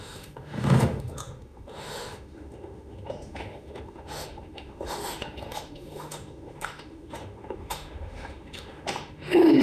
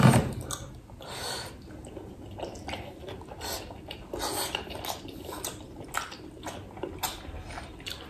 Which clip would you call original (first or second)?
second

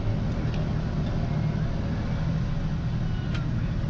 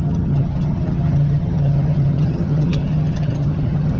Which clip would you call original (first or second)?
first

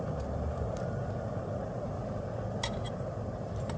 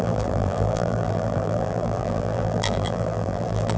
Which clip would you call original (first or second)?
first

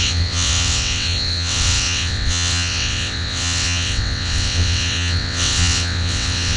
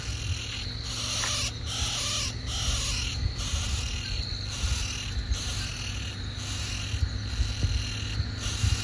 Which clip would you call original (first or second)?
second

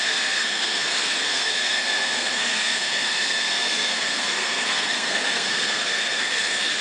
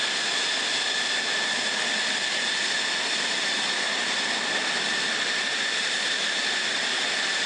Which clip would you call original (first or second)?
second